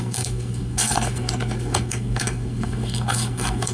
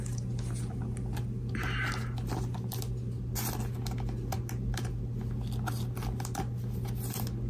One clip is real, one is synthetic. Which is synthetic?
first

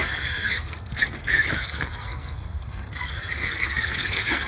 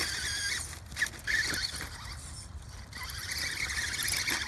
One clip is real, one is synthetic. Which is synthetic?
first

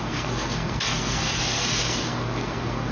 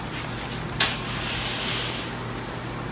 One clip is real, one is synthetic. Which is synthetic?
first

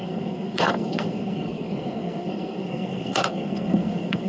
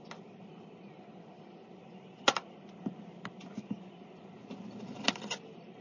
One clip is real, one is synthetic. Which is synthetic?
first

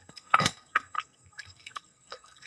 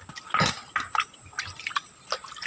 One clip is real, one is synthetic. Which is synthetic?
first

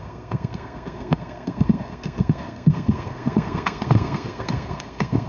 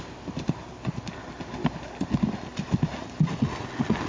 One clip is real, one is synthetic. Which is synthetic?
first